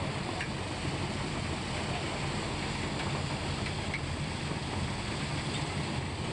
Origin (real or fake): real